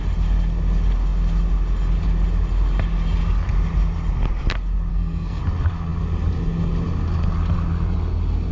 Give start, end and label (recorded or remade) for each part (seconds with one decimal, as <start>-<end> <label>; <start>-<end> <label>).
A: 0.0-4.9 recorded; 4.9-5.4 remade; 5.4-8.5 recorded